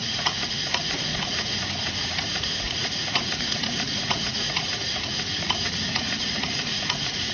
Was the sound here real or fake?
fake